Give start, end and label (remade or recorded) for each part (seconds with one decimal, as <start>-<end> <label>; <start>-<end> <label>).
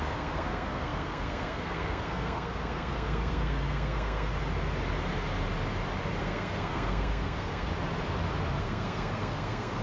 0.0-4.3 remade; 4.3-6.2 recorded; 6.2-7.7 remade; 7.7-8.6 recorded; 8.6-9.8 remade